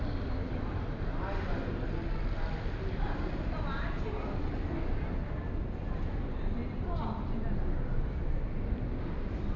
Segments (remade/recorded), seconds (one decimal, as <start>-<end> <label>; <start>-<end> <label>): 0.0-9.6 recorded